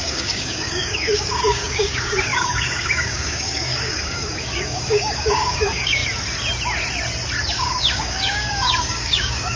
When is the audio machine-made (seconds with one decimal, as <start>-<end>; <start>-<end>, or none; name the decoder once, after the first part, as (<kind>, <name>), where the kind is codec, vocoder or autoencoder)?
0.0-6.0 (codec, DAC); 7.5-9.6